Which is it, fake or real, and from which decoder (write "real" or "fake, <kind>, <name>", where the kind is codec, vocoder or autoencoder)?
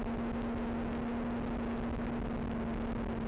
real